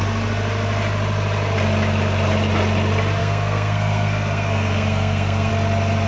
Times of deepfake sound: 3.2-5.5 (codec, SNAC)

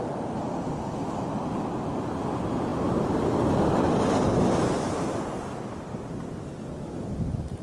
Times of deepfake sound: none

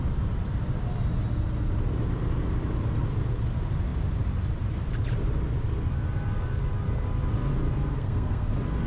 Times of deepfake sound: 7.9-8.5 (codec, SNAC)

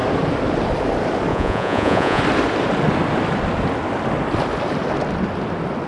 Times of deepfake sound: 1.3-2.2 (vocoder, Vocos)

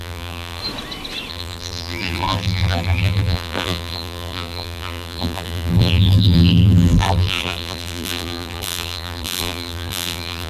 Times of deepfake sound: 0.0-0.6 (vocoder, BigVGAN v2); 1.3-10.5